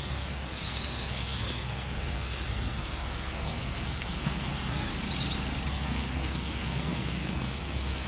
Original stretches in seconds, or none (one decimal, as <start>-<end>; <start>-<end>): 4.9-5.7